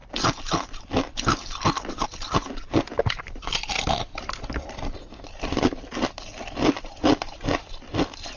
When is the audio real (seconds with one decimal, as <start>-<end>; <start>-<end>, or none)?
0.0-8.4